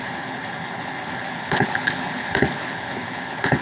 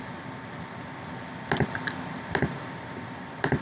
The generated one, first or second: first